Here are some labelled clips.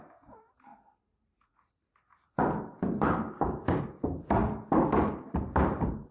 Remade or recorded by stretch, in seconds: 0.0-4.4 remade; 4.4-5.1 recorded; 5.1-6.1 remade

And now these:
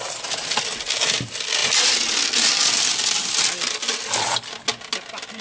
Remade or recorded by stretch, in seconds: 0.0-5.4 recorded

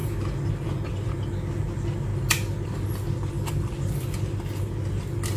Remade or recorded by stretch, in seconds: 0.0-5.4 recorded

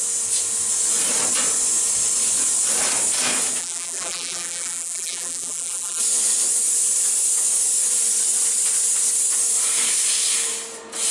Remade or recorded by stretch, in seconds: 0.0-3.6 recorded; 3.6-6.0 remade; 6.0-11.1 recorded

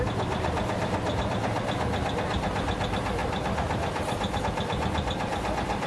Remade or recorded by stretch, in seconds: 0.0-3.2 recorded; 3.2-4.4 remade; 4.4-5.9 recorded

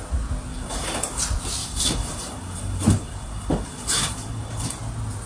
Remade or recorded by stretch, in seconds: 0.0-0.5 recorded; 0.5-1.2 remade; 1.2-1.6 recorded; 1.6-4.8 remade; 4.8-5.3 recorded

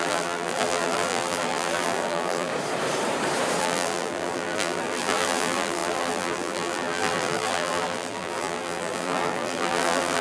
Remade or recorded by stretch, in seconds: 0.0-2.5 remade; 2.5-3.6 recorded; 3.6-10.2 remade

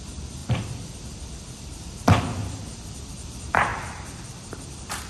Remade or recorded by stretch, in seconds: 0.0-5.1 remade